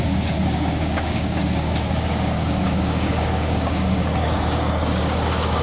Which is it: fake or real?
fake